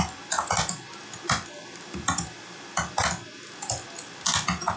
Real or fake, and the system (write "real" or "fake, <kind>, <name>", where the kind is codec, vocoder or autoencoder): real